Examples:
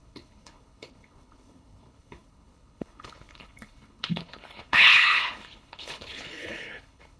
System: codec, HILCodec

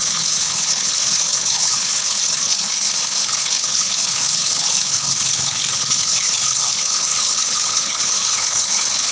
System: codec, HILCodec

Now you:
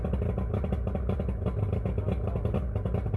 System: none